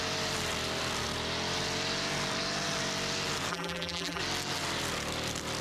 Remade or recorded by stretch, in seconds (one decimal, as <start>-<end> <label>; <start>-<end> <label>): 0.0-3.5 recorded; 3.5-4.2 remade; 4.2-5.6 recorded